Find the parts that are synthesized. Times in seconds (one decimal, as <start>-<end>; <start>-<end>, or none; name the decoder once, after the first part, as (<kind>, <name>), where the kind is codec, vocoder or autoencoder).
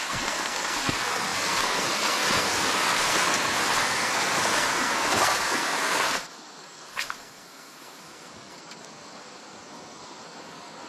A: 0.0-10.9 (codec, SNAC)